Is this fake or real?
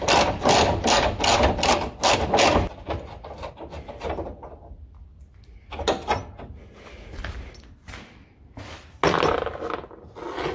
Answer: real